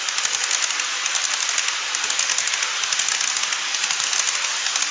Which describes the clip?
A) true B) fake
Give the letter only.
A